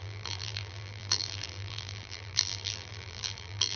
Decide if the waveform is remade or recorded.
remade